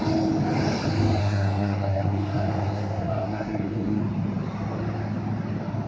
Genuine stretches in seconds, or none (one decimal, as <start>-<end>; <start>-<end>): 0.0-1.2; 4.0-5.9

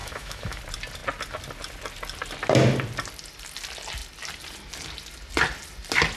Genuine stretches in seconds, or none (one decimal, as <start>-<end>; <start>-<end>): 0.6-6.2

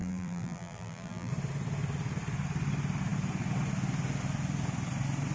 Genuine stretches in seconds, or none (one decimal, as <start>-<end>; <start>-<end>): 1.3-5.3

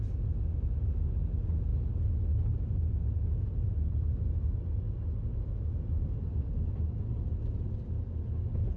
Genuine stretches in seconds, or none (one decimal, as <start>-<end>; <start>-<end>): 0.0-8.8

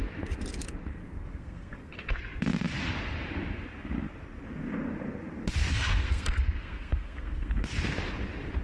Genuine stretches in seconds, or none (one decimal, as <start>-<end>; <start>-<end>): 0.0-0.9; 1.9-5.7; 7.6-8.6